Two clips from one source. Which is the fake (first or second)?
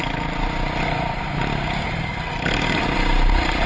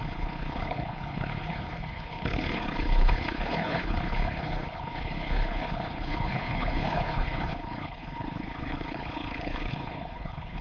second